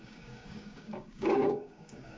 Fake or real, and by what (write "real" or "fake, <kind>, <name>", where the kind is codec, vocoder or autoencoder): fake, codec, DAC